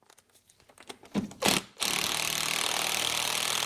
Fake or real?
real